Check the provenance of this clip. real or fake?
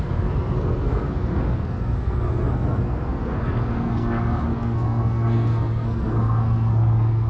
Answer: fake